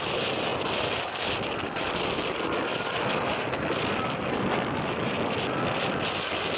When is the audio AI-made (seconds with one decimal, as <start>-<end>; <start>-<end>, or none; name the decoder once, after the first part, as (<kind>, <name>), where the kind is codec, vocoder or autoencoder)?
none